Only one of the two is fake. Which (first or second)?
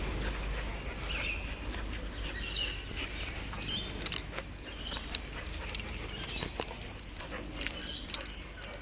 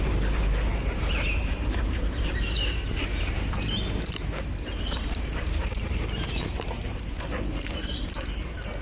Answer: second